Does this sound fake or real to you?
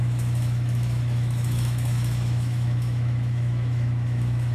fake